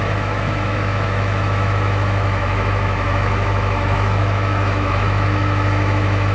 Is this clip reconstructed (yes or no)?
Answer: yes